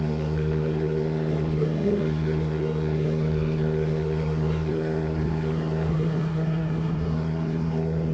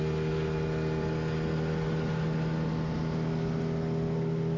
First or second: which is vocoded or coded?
first